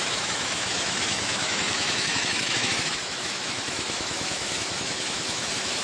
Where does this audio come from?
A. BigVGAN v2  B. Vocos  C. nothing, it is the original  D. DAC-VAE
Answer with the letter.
D